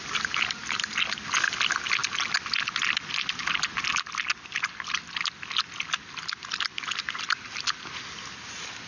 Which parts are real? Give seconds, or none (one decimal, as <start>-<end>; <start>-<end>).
0.0-8.9